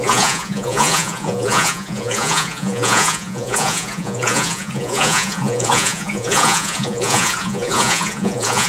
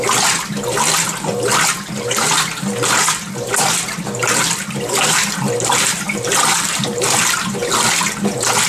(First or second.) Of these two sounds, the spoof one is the first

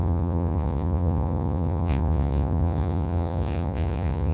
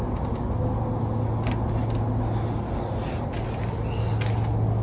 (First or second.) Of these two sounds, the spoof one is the first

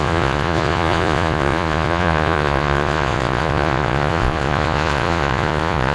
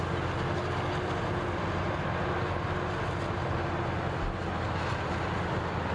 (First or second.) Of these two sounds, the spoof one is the first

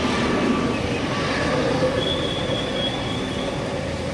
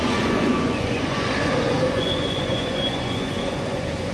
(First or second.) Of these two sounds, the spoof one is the second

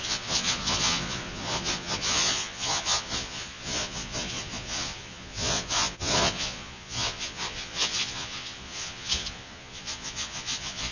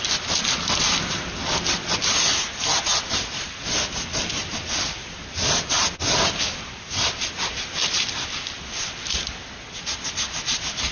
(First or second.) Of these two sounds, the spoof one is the first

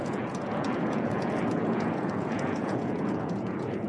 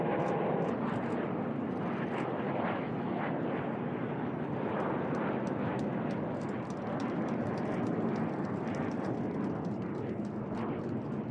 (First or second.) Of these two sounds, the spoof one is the first